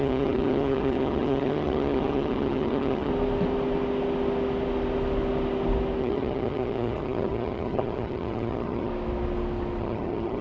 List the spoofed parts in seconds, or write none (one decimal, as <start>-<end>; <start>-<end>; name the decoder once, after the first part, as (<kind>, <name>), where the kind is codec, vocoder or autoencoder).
0.0-3.1 (vocoder, HiFi-GAN); 6.0-8.9; 9.8-10.4